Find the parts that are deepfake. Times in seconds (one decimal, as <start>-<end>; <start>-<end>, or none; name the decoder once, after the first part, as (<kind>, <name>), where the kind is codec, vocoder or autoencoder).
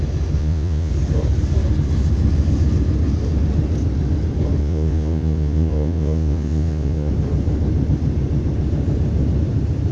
0.4-0.9 (vocoder, Vocos); 4.6-7.1